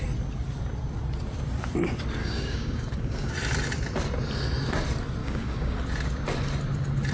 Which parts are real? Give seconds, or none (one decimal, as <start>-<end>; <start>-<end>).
0.0-2.2; 3.3-5.2; 5.8-7.1